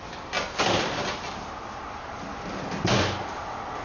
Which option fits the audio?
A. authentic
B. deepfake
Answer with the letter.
A